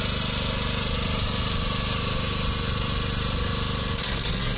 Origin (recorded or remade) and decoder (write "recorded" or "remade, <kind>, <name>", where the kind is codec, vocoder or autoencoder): recorded